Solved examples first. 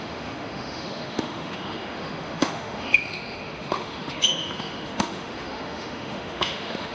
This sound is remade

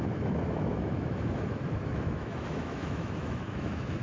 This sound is remade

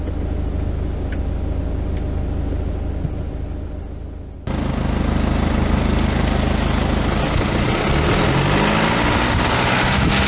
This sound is recorded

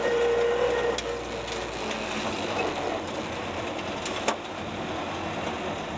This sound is recorded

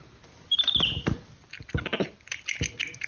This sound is recorded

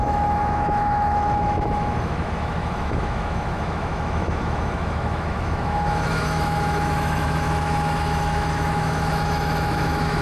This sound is remade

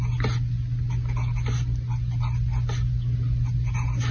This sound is recorded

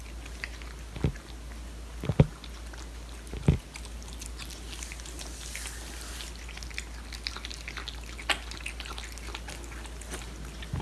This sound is recorded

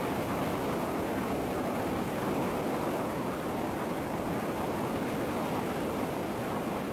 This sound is recorded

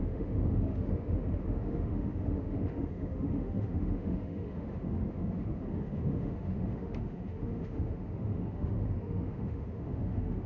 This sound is remade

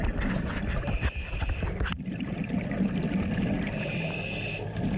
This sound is recorded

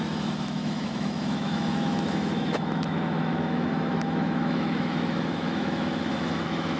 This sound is remade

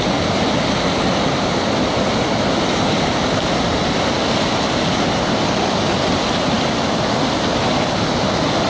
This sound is recorded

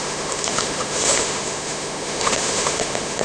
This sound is remade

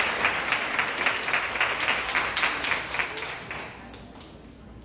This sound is recorded